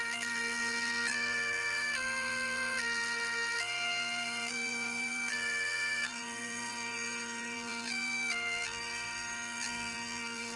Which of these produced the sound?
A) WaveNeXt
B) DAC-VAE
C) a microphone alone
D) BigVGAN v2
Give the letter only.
D